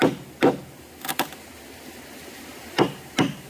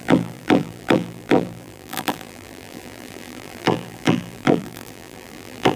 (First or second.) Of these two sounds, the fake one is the second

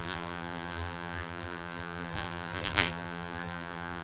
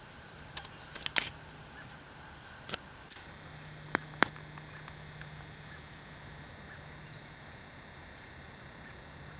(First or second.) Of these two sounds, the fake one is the first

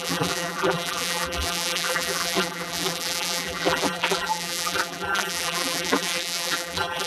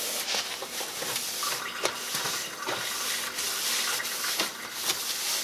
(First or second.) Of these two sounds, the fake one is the first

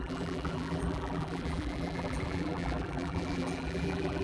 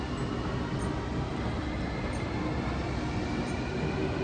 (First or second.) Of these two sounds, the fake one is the first